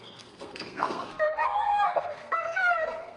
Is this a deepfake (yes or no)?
yes